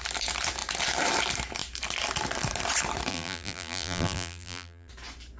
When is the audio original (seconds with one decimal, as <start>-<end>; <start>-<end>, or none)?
0.0-3.1; 4.9-5.4